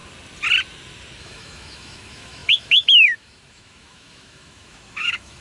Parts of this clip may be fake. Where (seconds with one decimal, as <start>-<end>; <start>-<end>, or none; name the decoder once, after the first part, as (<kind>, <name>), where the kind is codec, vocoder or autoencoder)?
1.2-5.4 (autoencoder, DAC-VAE)